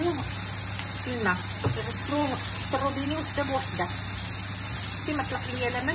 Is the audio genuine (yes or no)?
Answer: yes